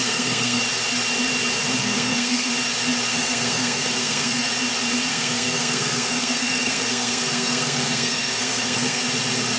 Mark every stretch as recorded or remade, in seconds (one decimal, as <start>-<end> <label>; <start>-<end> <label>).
0.0-0.6 remade; 0.6-1.8 recorded; 1.8-2.5 remade; 2.5-3.1 recorded; 3.1-4.5 remade; 4.5-5.1 recorded; 5.1-9.0 remade; 9.0-9.6 recorded